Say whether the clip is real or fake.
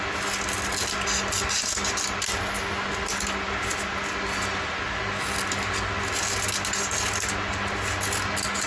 real